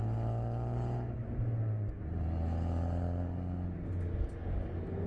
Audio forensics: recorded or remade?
recorded